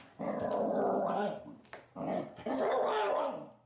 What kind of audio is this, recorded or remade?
recorded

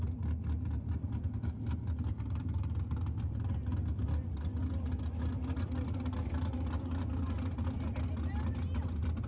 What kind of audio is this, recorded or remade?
recorded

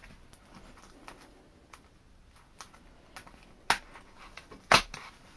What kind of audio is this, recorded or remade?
recorded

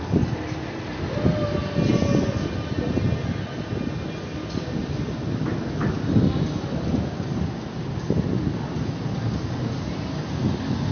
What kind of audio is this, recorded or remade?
recorded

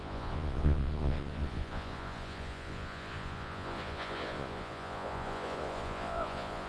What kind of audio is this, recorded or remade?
remade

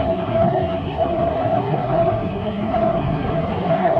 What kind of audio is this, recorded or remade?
remade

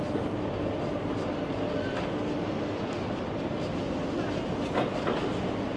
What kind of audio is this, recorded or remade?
recorded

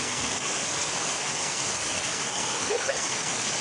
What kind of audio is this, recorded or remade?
remade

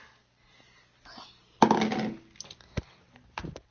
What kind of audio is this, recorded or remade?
recorded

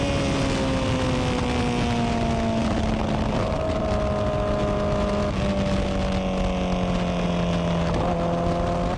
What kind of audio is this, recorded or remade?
recorded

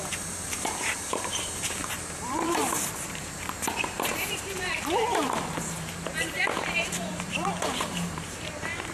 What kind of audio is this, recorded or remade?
remade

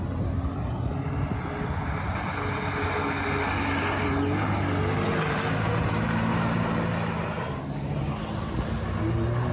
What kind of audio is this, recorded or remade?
recorded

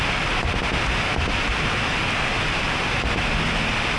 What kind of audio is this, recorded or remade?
recorded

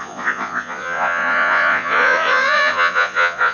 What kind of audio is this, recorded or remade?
remade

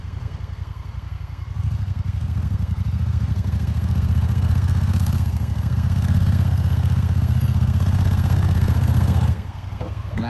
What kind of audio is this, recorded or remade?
remade